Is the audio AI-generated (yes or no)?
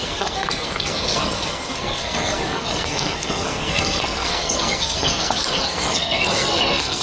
yes